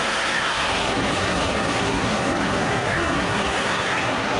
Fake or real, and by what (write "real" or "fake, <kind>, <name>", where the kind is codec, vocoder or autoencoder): fake, codec, SNAC